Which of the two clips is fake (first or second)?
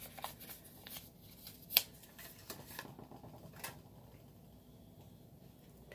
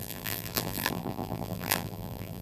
second